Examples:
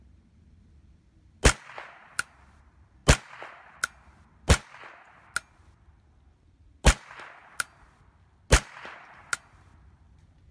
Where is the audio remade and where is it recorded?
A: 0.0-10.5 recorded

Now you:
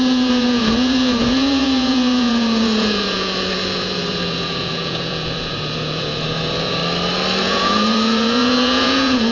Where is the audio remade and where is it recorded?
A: 0.0-6.8 remade; 6.8-7.4 recorded; 7.4-9.3 remade

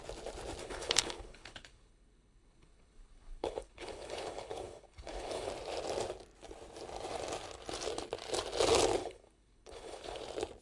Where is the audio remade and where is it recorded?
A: 0.0-0.6 recorded; 0.6-5.5 remade; 5.5-9.0 recorded; 9.0-10.2 remade; 10.2-10.6 recorded